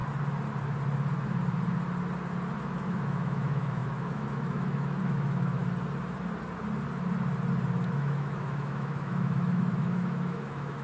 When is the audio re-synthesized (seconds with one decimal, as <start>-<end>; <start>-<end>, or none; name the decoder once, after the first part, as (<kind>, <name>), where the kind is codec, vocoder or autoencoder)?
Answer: 2.6-5.6 (autoencoder, DAC-VAE); 7.9-10.8